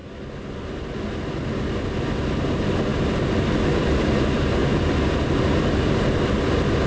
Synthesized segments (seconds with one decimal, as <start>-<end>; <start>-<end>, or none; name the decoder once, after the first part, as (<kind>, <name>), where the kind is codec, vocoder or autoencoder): none